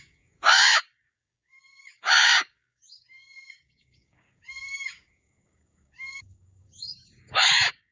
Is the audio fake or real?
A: fake